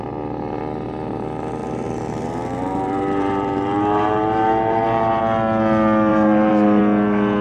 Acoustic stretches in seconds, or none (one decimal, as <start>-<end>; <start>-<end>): 0.0-1.6; 5.2-6.1; 6.8-7.4